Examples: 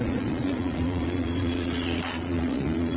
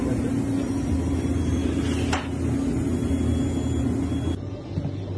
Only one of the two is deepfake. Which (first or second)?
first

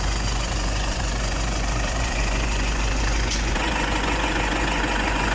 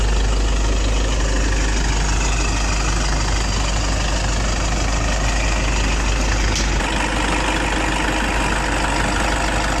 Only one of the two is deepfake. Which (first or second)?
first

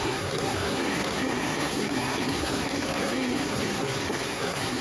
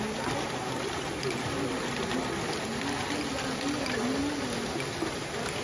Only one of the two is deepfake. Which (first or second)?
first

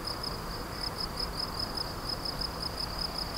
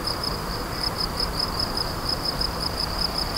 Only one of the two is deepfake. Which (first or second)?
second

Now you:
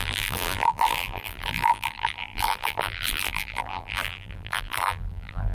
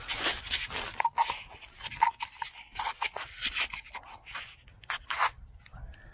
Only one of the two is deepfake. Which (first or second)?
first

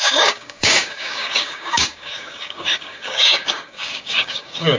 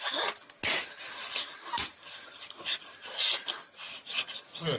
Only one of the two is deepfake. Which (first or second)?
first